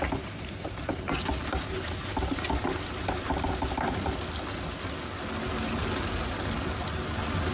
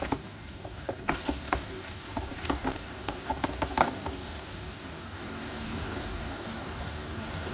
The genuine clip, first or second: first